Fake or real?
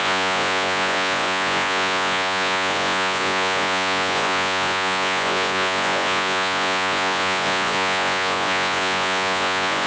fake